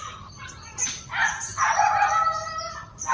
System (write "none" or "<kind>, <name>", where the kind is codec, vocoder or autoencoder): none